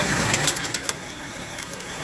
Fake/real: fake